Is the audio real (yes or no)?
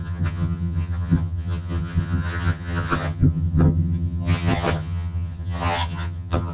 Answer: no